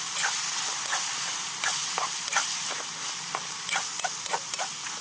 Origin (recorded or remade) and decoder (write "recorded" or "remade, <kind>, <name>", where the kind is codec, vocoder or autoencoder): recorded